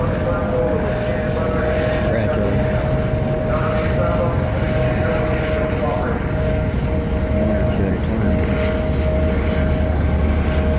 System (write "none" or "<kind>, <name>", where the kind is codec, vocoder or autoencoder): none